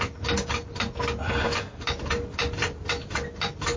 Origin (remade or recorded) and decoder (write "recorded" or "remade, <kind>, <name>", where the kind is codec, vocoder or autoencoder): recorded